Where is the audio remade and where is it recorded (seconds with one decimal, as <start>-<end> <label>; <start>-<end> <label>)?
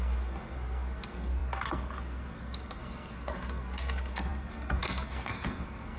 0.0-6.0 remade